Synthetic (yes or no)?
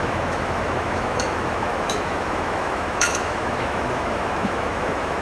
yes